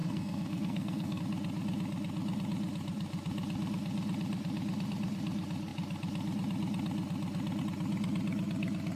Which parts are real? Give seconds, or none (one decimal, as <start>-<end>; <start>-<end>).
1.2-9.0